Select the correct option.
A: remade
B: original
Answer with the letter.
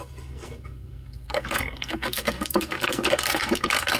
A